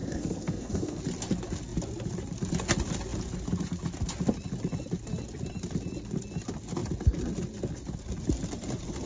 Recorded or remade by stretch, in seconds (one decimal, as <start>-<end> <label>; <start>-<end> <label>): 0.0-1.0 remade; 1.0-9.1 recorded